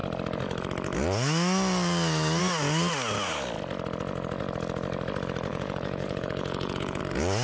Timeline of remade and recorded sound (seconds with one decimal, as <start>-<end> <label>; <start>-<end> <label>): 0.0-5.5 recorded; 5.5-7.0 remade; 7.0-7.4 recorded